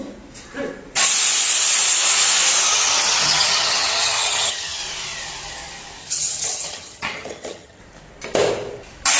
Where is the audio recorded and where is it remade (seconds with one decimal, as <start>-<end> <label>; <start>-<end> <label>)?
0.0-2.7 recorded; 2.7-4.8 remade; 4.8-6.0 recorded; 6.0-7.8 remade; 7.8-9.2 recorded